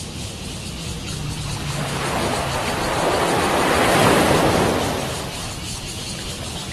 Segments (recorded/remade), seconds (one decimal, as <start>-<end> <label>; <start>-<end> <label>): 0.0-6.7 recorded